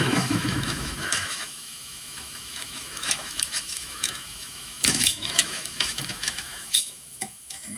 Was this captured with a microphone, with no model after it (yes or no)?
no